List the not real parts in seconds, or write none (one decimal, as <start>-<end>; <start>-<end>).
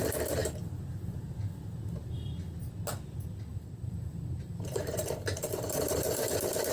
0.4-1.8; 3.5-6.2